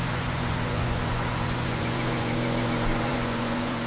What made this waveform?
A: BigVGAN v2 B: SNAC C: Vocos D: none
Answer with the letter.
C